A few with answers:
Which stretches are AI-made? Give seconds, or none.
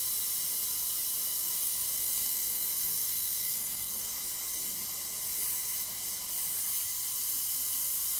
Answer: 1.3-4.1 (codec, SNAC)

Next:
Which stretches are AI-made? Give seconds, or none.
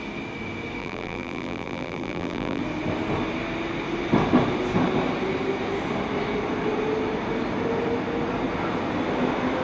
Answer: 0.8-2.6 (vocoder, BigVGAN v2)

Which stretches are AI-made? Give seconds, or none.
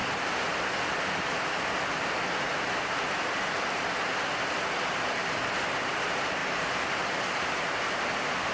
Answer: none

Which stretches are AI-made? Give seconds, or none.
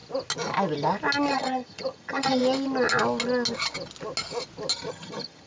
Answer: 1.3-2.4 (vocoder, HiFi-GAN); 4.9-5.5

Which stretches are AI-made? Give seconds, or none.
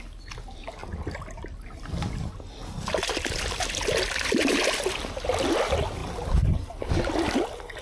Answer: none